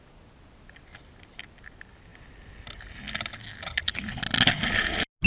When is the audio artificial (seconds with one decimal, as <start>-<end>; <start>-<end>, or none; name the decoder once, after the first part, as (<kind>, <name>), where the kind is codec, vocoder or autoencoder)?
none